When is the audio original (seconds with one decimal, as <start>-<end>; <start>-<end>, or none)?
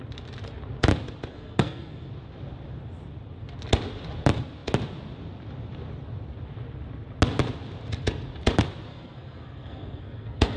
0.0-1.3; 2.1-8.9